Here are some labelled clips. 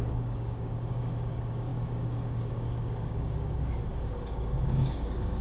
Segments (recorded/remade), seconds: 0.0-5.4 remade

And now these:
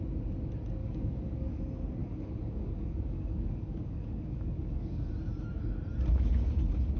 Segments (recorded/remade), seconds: 0.0-0.8 recorded; 0.8-1.6 remade; 1.6-2.0 recorded; 2.0-5.1 remade; 5.1-7.0 recorded

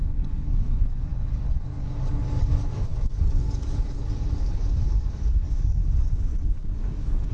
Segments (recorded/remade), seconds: 0.0-1.1 remade; 1.1-1.6 recorded; 1.6-7.3 remade

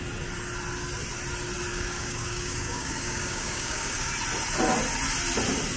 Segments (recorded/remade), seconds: 0.0-1.7 recorded; 1.7-4.1 remade; 4.1-5.8 recorded

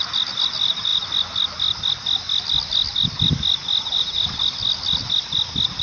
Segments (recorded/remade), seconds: 0.0-5.8 recorded